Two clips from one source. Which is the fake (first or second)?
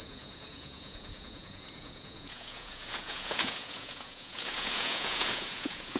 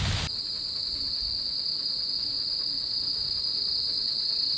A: first